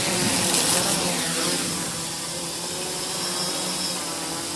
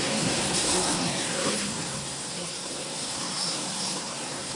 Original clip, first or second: first